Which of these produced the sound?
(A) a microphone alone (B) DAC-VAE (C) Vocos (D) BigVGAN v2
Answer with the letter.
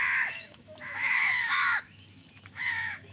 B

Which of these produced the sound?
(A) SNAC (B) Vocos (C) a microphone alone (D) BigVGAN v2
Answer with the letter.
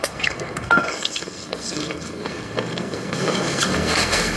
A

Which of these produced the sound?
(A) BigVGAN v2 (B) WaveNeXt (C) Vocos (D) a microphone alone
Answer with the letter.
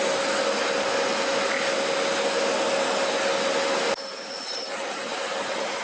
D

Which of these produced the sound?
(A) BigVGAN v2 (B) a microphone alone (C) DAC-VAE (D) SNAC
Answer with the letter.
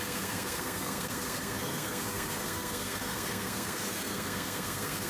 D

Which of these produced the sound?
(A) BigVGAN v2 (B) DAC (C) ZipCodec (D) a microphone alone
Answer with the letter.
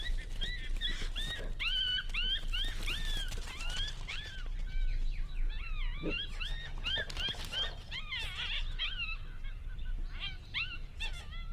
D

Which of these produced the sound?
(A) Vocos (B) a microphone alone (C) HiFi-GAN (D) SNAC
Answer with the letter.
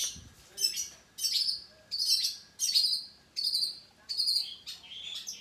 B